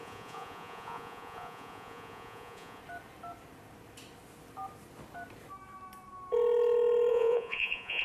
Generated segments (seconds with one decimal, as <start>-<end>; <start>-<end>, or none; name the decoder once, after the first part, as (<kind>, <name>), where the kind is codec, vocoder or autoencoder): 0.0-2.8 (vocoder, Vocos); 7.1-8.0